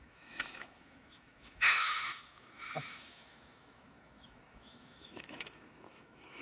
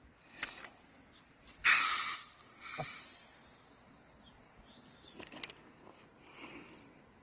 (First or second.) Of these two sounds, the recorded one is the second